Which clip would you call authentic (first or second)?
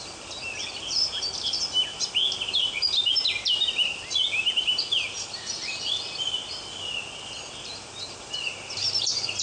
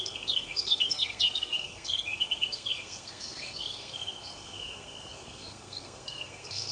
first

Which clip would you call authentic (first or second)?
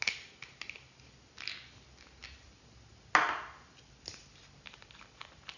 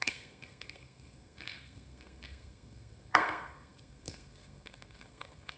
first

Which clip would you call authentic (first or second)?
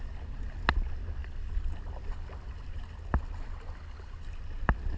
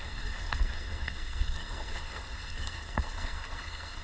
first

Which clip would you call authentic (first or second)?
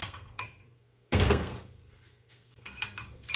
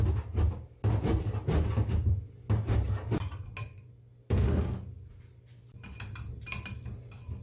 second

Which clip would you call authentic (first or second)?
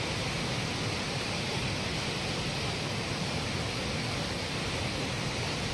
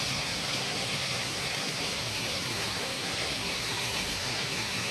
first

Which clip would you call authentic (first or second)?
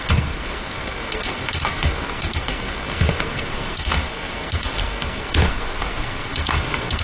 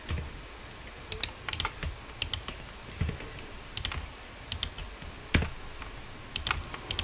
second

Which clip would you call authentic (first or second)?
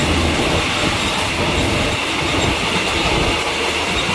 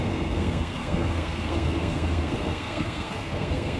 first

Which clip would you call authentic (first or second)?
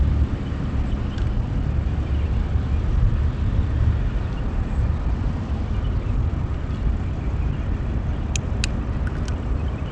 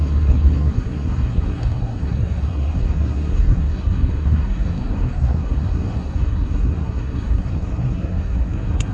first